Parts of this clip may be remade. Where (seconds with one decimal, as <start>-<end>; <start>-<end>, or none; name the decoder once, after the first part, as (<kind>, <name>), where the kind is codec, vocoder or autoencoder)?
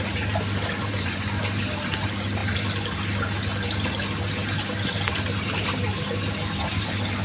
0.8-1.4 (vocoder, Vocos)